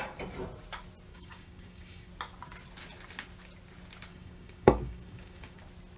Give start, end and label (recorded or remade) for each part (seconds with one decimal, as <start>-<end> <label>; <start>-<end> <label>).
0.0-1.1 recorded; 1.1-2.1 remade; 2.1-4.1 recorded; 4.1-5.6 remade; 5.6-6.0 recorded